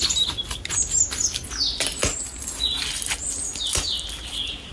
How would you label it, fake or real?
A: real